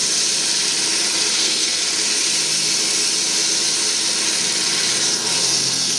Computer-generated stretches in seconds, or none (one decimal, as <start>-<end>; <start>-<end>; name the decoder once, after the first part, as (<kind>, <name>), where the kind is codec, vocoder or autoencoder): 1.3-1.8 (codec, SNAC); 5.4-6.0